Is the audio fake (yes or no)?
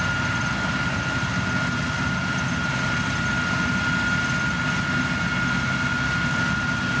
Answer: no